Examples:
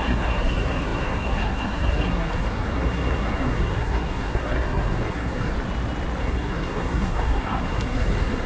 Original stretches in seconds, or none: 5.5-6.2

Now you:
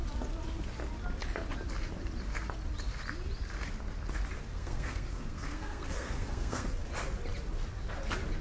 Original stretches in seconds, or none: 0.0-4.5; 6.7-8.4

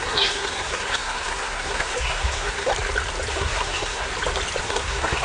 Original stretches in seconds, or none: 2.7-3.3; 4.1-4.6

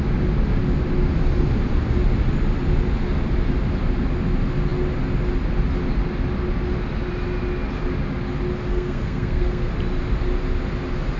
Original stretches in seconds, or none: 0.0-8.7; 9.7-11.2

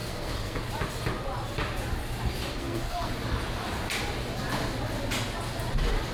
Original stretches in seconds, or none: 0.7-2.5; 3.1-6.1

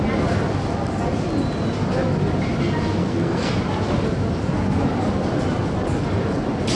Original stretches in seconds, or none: 0.0-3.0; 3.5-6.7

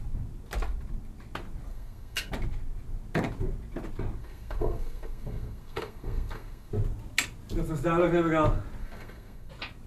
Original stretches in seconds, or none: 0.0-1.7; 2.3-4.2; 6.7-8.8; 9.5-9.9

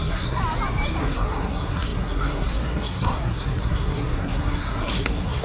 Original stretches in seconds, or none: 0.4-1.0